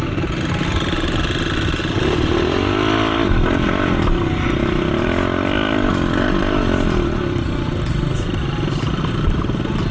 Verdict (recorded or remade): recorded